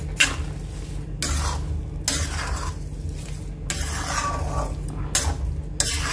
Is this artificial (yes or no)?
no